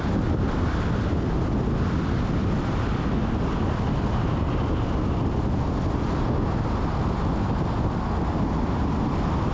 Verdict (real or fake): real